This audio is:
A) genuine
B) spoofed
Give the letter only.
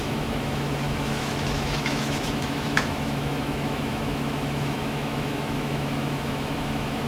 B